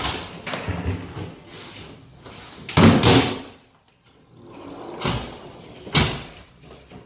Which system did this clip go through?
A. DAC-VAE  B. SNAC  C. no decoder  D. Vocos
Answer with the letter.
C